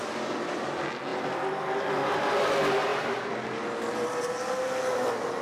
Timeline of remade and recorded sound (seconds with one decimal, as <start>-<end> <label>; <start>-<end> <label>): 0.0-5.4 recorded